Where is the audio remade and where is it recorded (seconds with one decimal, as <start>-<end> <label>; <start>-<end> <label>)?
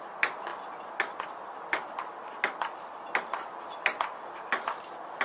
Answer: 0.0-5.2 recorded